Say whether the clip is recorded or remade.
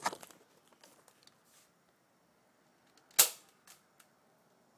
recorded